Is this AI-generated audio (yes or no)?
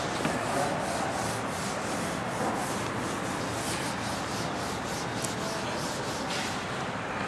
no